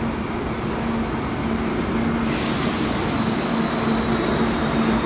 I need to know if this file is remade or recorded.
recorded